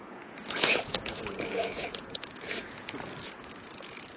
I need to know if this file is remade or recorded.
remade